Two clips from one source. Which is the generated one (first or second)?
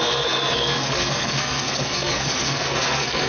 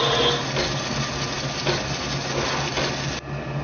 first